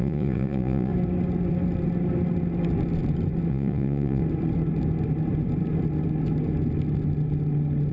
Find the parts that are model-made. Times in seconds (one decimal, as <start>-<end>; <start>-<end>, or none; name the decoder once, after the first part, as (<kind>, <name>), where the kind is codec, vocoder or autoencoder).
0.0-0.9 (vocoder, Vocos); 3.5-4.2